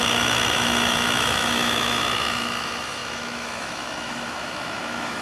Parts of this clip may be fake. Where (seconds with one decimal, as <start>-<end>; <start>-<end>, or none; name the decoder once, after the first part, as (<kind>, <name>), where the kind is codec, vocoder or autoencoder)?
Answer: 0.0-5.2 (autoencoder, DAC-VAE)